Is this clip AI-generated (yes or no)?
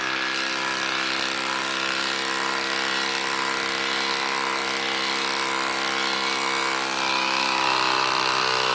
no